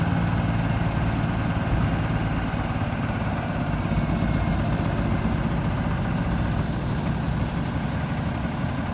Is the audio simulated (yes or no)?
no